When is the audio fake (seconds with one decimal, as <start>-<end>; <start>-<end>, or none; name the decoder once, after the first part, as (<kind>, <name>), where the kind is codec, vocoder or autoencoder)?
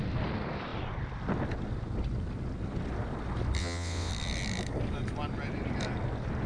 3.6-4.1 (vocoder, WaveNeXt)